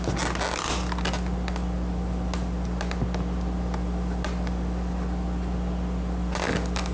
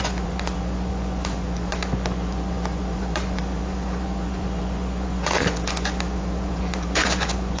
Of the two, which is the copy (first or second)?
second